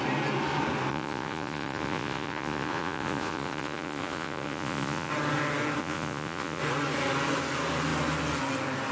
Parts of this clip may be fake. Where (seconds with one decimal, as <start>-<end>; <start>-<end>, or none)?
0.9-5.1; 5.8-6.6